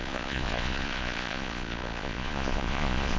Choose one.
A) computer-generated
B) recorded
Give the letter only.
A